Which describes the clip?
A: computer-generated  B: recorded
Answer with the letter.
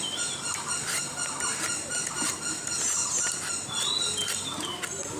B